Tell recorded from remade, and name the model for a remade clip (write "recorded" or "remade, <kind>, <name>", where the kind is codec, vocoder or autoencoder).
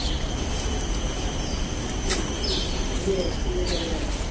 recorded